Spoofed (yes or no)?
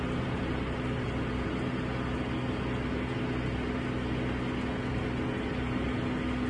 no